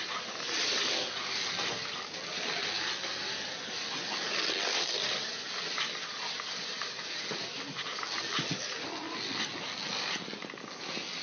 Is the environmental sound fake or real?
real